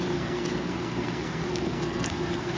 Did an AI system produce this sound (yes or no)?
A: yes